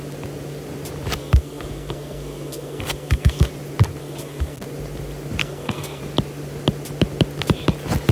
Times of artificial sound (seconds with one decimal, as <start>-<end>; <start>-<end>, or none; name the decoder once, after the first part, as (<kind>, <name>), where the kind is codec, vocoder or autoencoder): 1.2-3.5 (codec, SNAC); 4.0-4.6; 5.4-6.0